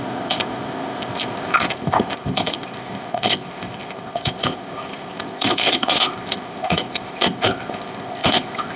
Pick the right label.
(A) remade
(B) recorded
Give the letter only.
A